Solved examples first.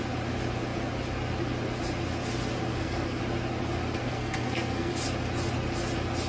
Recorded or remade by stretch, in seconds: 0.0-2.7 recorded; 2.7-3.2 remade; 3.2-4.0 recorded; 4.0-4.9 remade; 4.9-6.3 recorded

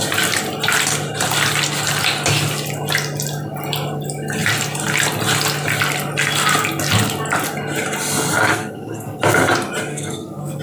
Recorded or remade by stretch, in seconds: 0.0-8.5 recorded; 8.5-9.2 remade; 9.2-9.9 recorded; 9.9-10.6 remade

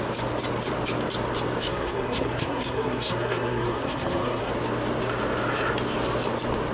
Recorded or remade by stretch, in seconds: 0.0-1.7 recorded; 1.7-4.5 remade; 4.5-6.7 recorded

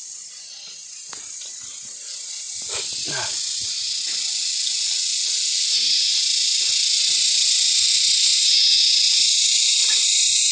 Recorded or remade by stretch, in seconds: 0.0-10.5 recorded